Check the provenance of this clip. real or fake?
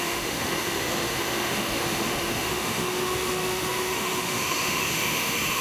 fake